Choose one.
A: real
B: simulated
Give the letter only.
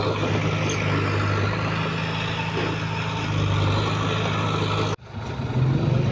A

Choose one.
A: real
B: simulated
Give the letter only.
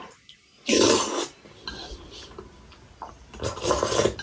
A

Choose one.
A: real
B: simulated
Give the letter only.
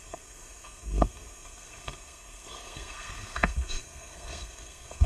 B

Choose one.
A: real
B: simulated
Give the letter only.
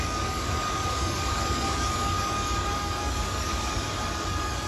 B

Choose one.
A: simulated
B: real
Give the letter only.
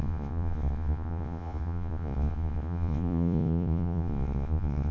A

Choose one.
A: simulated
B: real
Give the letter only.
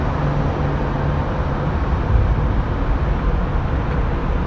B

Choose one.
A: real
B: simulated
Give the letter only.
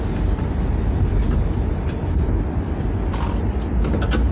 A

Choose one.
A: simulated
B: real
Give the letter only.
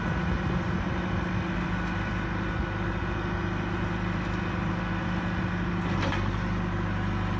B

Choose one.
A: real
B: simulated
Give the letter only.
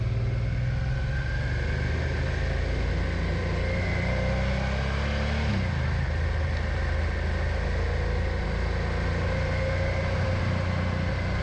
A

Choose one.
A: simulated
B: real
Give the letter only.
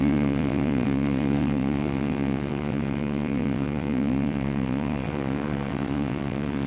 A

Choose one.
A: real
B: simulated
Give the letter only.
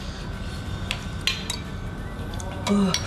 A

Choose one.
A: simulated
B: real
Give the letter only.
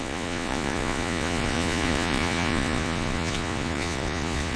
A